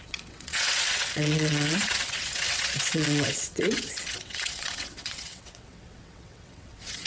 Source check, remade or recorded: remade